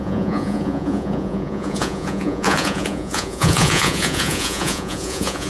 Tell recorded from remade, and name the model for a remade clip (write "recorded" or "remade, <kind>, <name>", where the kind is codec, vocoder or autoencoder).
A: remade, vocoder, Vocos